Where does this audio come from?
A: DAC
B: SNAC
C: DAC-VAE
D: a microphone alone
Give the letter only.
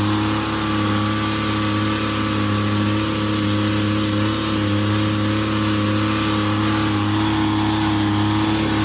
D